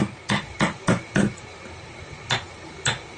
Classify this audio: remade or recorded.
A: recorded